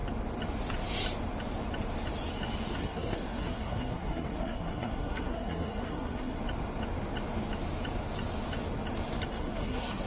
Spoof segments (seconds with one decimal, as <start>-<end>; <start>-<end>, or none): 2.8-6.4; 9.3-10.1